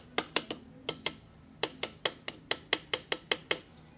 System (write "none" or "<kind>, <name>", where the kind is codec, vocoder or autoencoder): none